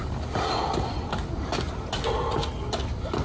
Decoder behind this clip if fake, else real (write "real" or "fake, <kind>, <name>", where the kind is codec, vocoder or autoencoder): real